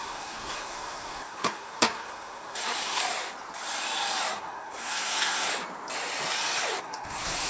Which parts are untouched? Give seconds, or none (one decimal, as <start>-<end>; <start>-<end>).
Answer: 3.0-4.3; 5.5-6.8